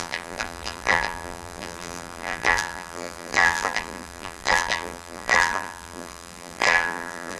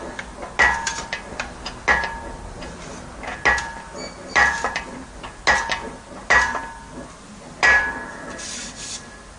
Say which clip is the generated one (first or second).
first